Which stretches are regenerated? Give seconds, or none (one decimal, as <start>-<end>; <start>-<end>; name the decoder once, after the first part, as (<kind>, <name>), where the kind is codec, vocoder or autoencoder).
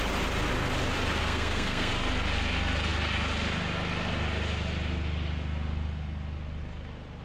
1.2-1.9 (codec, SNAC)